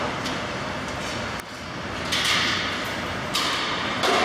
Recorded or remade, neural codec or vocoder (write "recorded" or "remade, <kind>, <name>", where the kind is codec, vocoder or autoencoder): recorded